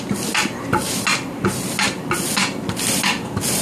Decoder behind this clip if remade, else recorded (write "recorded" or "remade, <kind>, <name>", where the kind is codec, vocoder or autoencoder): recorded